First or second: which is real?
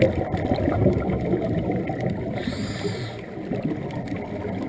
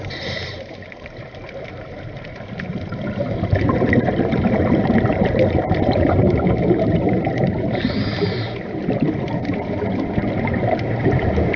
first